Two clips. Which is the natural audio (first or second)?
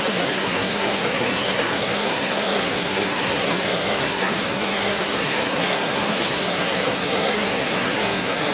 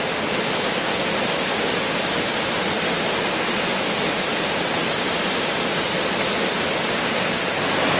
second